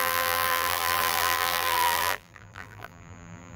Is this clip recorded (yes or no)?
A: no